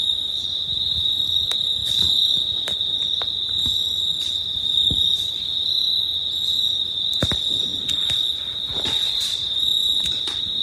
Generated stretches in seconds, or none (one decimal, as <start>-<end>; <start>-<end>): 0.0-1.8; 6.8-7.7; 9.1-10.6